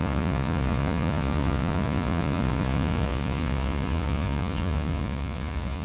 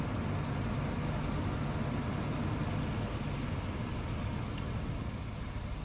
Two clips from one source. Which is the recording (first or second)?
second